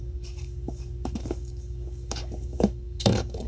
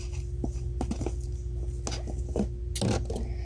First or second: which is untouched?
second